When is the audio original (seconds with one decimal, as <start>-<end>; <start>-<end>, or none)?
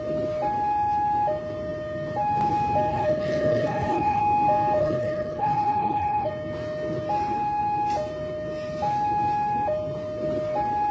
0.0-2.9; 4.2-4.8; 6.3-10.9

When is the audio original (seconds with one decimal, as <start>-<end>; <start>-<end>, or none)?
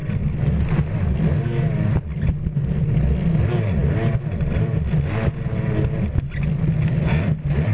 0.0-7.7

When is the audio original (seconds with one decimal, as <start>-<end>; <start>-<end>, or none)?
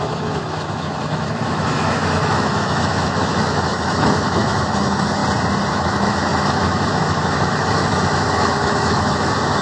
5.2-5.7